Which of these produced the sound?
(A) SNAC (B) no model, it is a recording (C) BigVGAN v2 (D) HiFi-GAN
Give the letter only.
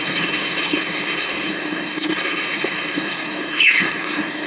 A